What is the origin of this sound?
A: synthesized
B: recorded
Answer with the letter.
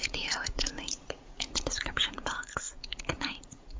A